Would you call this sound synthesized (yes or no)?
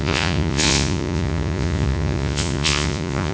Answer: yes